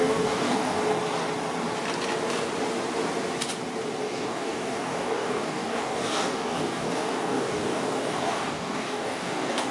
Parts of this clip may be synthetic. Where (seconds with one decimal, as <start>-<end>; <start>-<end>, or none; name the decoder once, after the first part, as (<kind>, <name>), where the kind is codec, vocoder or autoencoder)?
0.0-0.8 (codec, DAC); 4.0-9.7